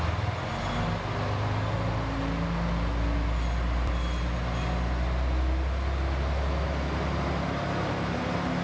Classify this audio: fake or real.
real